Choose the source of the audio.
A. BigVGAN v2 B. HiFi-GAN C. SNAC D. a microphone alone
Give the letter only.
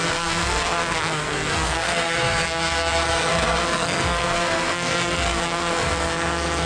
C